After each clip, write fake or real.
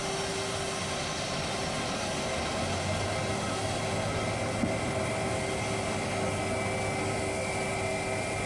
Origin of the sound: real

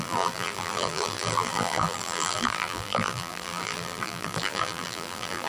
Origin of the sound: fake